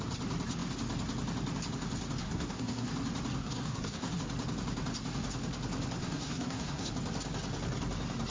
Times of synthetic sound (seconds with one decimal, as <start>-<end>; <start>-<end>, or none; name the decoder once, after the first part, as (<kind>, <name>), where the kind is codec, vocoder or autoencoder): 2.2-2.9 (codec, SNAC); 3.4-4.2; 6.0-6.9